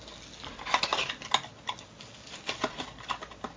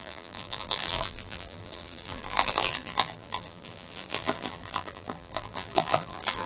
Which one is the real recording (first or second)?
first